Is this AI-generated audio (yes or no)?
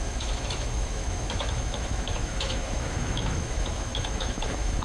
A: yes